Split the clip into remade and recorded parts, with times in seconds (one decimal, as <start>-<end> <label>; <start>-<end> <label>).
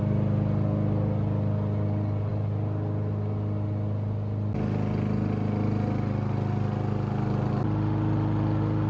0.0-8.9 recorded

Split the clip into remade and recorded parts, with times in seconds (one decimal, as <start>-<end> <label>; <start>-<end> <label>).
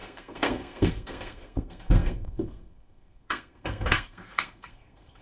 0.0-5.2 remade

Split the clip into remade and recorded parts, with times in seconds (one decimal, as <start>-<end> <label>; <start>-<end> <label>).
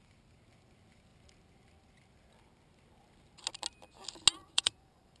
0.0-4.4 recorded; 4.4-5.2 remade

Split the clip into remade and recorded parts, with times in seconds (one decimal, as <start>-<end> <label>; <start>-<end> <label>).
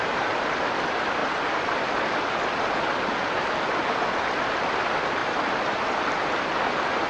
0.0-7.1 recorded